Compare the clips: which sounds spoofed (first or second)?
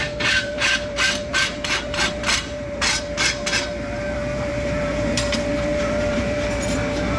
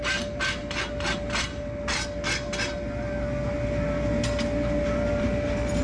first